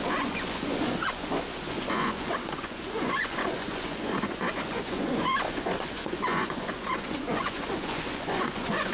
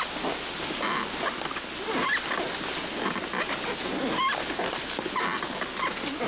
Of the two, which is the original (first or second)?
second